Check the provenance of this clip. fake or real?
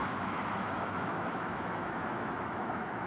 fake